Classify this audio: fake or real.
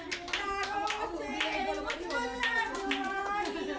real